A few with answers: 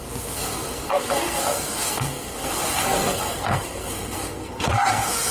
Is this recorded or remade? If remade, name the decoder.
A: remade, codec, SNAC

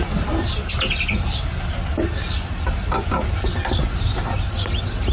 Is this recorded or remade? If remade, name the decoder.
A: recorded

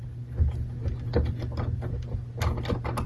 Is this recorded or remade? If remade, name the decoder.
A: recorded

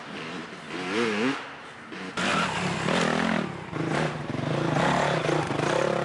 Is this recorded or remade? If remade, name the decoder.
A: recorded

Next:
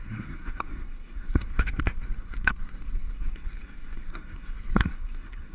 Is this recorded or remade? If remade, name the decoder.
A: remade, codec, SNAC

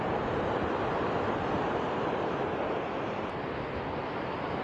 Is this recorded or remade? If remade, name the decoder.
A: recorded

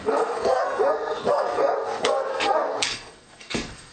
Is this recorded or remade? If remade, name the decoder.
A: remade, codec, SNAC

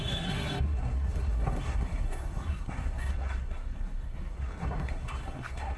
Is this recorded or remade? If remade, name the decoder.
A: remade, codec, SNAC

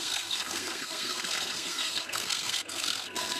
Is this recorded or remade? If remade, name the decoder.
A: remade, codec, SNAC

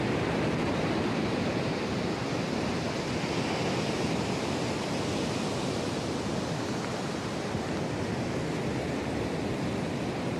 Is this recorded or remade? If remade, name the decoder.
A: recorded